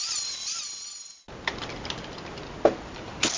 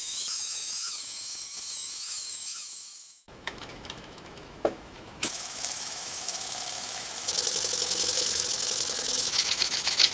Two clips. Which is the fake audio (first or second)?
second